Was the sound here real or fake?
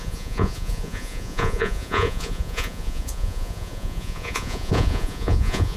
fake